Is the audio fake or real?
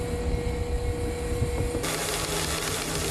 real